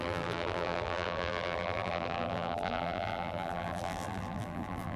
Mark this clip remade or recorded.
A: remade